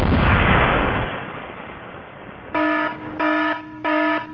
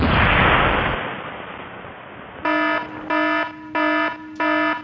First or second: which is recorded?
second